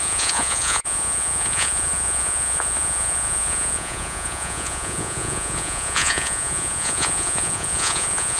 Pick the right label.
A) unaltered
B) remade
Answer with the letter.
B